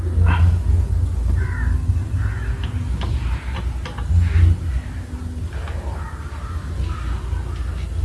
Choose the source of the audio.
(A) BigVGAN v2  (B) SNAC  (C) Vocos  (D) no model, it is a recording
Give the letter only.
D